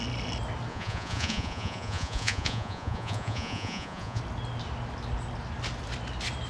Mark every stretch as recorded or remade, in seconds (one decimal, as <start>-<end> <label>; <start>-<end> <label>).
0.0-0.7 recorded; 0.7-4.2 remade; 4.2-6.5 recorded